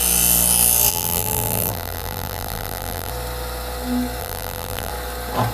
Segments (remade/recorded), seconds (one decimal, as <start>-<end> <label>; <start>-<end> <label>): 0.0-0.9 recorded; 0.9-3.1 remade; 3.1-4.2 recorded; 4.2-4.9 remade; 4.9-5.5 recorded